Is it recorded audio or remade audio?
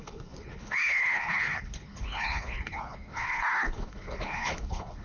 remade